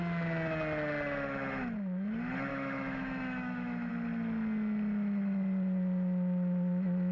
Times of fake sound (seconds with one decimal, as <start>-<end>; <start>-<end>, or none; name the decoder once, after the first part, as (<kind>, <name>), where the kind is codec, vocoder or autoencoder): 2.5-3.9 (autoencoder, DAC-VAE)